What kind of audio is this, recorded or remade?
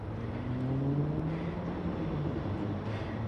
recorded